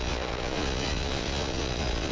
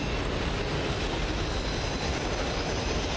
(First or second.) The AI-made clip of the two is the first